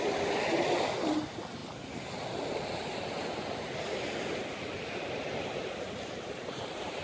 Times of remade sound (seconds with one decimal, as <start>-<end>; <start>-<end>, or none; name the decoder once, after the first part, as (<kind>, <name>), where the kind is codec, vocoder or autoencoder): none